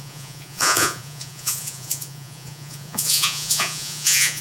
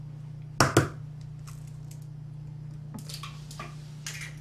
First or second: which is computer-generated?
first